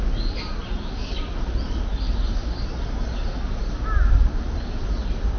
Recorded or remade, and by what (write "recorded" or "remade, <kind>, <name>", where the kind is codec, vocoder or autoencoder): recorded